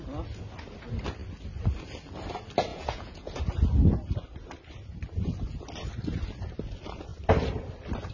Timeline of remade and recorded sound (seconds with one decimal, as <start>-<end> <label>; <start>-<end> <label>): 0.0-2.7 recorded; 2.7-3.4 remade; 3.4-8.1 recorded